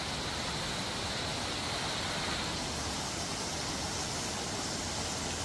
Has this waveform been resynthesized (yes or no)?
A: no